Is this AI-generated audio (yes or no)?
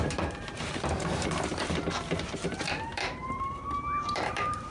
yes